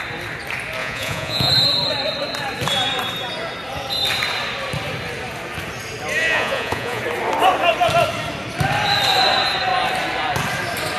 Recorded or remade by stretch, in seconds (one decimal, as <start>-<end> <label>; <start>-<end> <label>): 0.0-0.8 recorded; 0.8-1.5 remade; 1.5-6.2 recorded; 6.2-7.0 remade; 7.0-11.0 recorded